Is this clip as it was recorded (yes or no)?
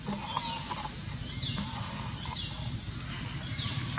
yes